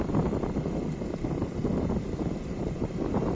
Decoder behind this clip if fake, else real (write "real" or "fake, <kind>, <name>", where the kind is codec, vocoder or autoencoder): real